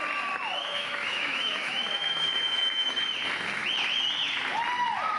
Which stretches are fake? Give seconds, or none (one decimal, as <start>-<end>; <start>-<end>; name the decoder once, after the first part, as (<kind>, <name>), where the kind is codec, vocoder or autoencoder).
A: 0.6-3.0 (autoencoder, DAC-VAE)